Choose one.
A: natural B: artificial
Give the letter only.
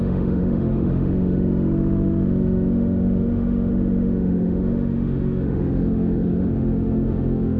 B